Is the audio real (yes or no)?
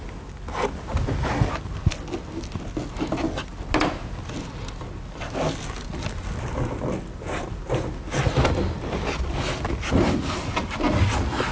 yes